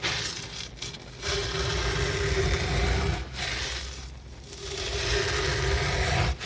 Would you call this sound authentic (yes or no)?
yes